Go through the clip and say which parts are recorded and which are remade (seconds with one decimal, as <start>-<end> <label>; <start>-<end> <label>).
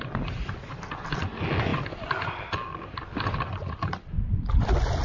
0.0-5.0 recorded